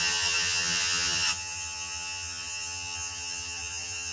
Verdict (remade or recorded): remade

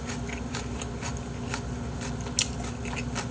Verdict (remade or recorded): recorded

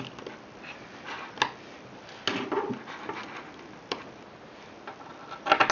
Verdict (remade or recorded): recorded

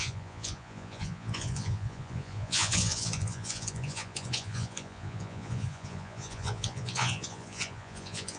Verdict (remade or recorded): remade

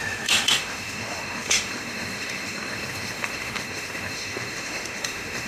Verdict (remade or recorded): remade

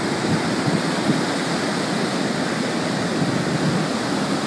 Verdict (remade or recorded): recorded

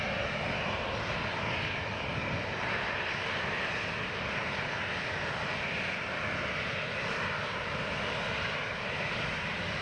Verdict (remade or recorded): recorded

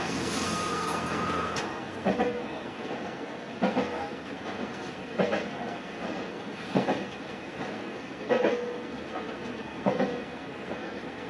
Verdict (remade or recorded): remade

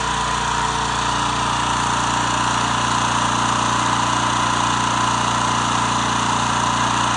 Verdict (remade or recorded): recorded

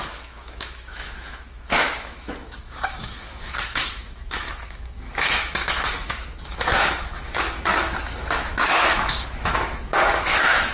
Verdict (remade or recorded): remade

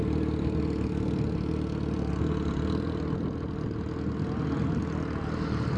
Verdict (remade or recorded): recorded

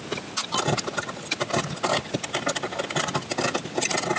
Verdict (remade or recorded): recorded